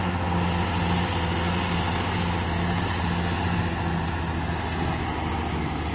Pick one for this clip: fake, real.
real